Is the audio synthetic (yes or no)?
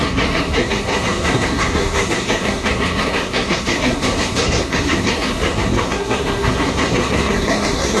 yes